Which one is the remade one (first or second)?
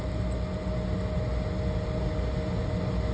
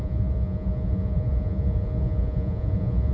second